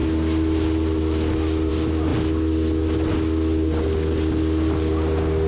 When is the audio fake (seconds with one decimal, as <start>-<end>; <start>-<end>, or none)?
none